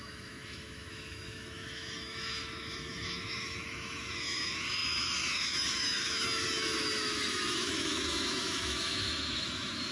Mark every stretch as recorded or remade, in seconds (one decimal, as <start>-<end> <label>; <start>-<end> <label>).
0.0-9.9 remade